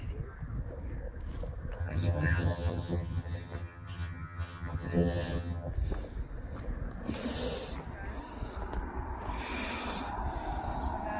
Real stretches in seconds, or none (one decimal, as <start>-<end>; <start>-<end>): 0.0-1.8; 5.7-11.2